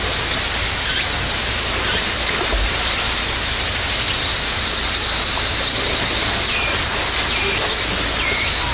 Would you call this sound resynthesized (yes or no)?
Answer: no